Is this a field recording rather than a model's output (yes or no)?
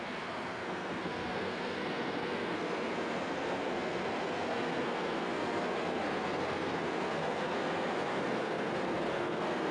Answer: no